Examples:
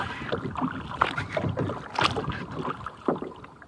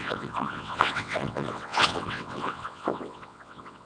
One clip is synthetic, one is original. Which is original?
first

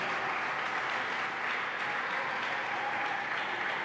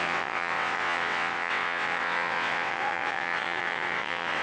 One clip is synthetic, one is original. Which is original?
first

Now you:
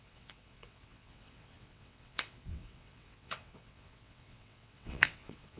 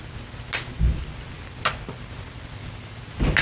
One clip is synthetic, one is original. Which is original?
second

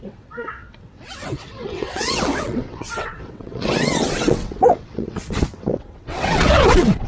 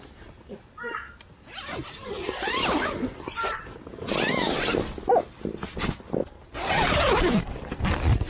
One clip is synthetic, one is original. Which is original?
second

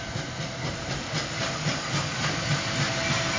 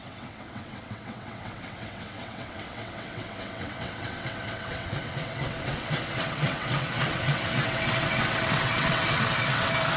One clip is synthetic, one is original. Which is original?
first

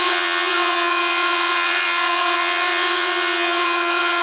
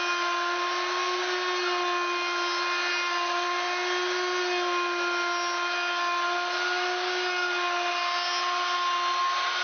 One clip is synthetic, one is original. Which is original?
second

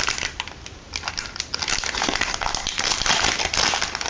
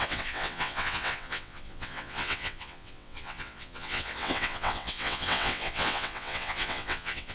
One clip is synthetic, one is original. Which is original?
first